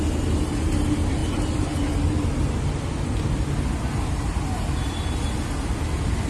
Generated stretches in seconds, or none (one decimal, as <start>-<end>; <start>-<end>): none